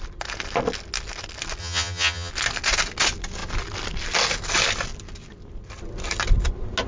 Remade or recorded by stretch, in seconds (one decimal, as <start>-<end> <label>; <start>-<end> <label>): 0.0-1.6 recorded; 1.6-2.3 remade; 2.3-6.9 recorded